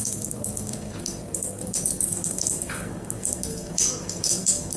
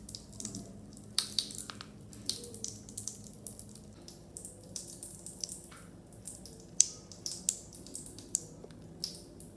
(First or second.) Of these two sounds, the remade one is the first